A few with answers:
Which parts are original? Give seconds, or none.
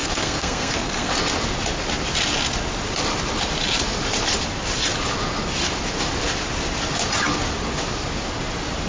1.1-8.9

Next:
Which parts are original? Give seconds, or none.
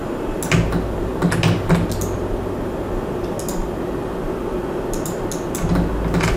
0.0-6.4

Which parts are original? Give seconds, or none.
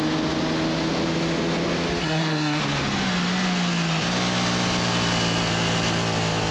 0.0-2.0; 2.6-6.5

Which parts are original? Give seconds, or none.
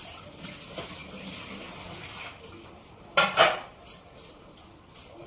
0.0-5.3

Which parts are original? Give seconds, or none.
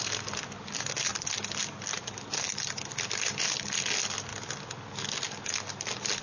0.0-6.2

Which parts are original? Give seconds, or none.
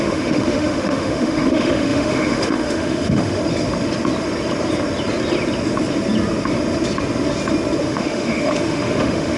3.4-7.8